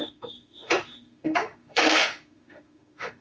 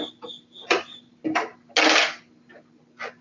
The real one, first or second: second